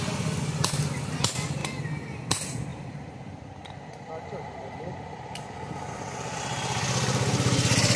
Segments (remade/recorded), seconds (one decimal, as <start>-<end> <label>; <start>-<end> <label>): 0.0-2.7 recorded; 2.7-5.5 remade; 5.5-8.0 recorded